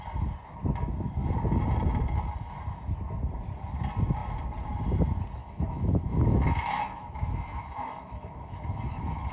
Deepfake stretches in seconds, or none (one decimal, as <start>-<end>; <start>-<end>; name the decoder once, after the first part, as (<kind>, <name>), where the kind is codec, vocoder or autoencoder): 5.4-9.3 (autoencoder, DAC-VAE)